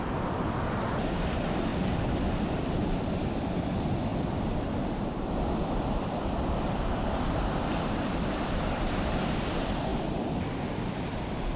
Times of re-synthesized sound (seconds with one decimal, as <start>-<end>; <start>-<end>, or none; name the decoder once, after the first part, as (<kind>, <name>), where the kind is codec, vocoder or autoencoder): 0.0-1.7 (vocoder, BigVGAN v2); 3.1-11.6